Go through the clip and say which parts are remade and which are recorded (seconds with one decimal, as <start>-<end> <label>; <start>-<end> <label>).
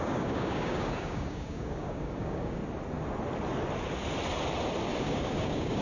0.0-2.6 remade; 2.6-5.0 recorded; 5.0-5.8 remade